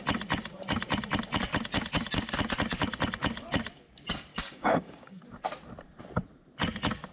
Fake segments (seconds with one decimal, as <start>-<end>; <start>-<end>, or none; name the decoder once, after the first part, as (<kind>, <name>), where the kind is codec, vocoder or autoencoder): 4.3-5.2 (codec, DAC)